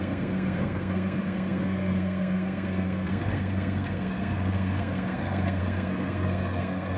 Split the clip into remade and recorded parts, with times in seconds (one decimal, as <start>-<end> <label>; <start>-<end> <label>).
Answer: 0.0-7.0 remade